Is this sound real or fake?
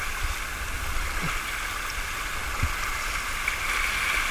real